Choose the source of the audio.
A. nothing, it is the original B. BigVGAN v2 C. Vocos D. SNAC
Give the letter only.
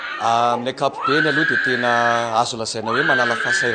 A